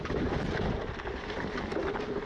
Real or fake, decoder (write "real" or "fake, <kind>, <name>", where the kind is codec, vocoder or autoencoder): real